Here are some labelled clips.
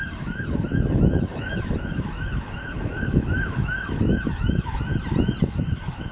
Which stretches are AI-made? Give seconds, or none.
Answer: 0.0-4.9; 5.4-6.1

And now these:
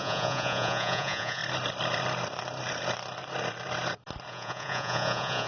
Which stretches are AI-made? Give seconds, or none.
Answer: 0.0-1.4; 4.3-5.5

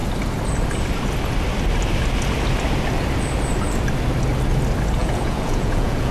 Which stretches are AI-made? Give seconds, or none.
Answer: 5.0-6.1

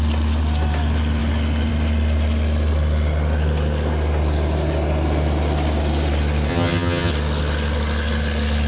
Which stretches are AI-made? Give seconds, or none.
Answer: 6.5-7.1

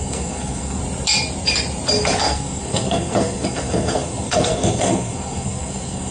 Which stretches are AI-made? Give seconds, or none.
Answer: 0.0-0.8; 2.2-6.1

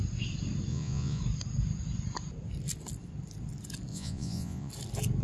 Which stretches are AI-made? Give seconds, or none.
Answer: 0.7-1.2; 3.9-4.7

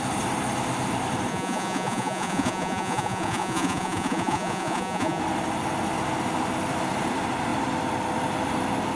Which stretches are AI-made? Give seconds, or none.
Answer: 1.3-5.2